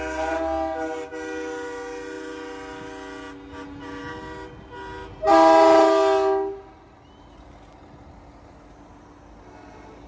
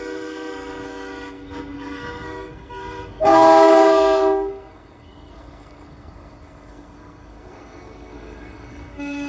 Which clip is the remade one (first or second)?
second